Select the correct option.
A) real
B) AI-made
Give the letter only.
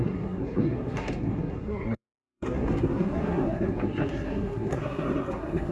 B